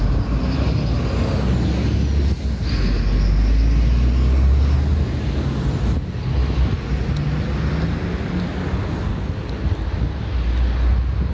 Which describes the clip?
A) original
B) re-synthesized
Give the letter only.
A